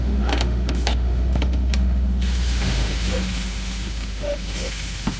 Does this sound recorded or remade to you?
remade